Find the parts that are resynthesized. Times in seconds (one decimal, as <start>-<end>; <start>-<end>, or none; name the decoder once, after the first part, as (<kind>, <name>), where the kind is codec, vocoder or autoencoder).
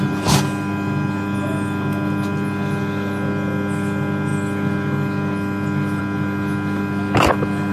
none